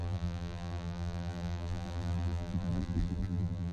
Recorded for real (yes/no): no